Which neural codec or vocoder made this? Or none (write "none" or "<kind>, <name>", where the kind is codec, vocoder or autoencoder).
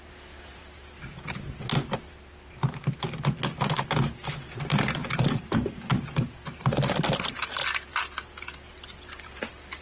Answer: none